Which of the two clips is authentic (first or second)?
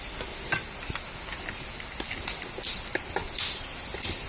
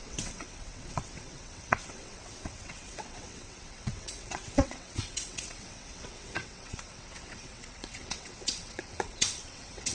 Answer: first